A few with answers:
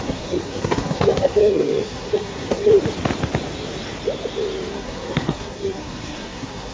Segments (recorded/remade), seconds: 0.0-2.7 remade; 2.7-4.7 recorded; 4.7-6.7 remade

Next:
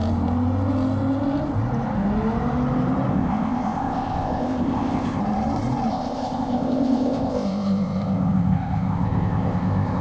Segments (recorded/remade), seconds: 0.0-3.1 recorded; 3.1-5.2 remade; 5.2-5.9 recorded; 5.9-10.0 remade

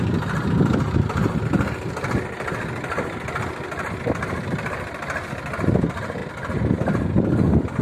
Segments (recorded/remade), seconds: 0.0-7.8 recorded

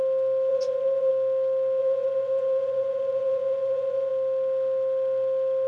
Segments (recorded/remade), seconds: 0.0-0.5 recorded; 0.5-1.1 remade; 1.1-1.8 recorded; 1.8-4.1 remade; 4.1-5.7 recorded

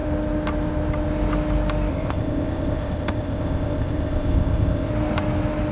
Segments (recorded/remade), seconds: 0.0-1.9 recorded; 1.9-4.9 remade; 4.9-5.7 recorded

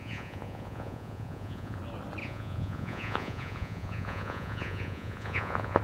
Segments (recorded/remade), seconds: 0.0-1.8 remade; 1.8-2.2 recorded; 2.2-5.8 remade